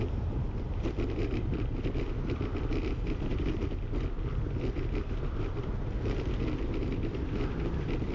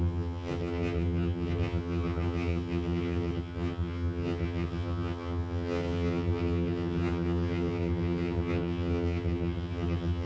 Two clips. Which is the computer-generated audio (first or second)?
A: second